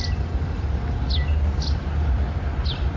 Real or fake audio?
real